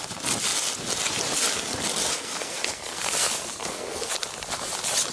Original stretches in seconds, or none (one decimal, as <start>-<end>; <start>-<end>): 0.0-2.1; 4.1-5.1